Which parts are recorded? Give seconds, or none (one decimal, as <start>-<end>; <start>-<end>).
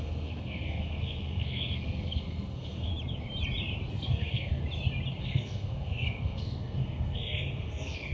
2.9-3.9; 4.6-5.2